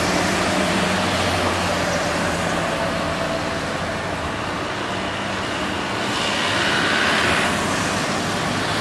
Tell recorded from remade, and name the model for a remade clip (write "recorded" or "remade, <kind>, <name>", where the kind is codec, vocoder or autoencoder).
recorded